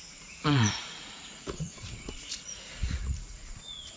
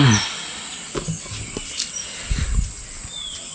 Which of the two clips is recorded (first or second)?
second